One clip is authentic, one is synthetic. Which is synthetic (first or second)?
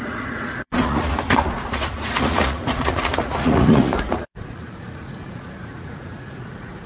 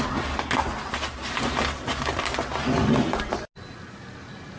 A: first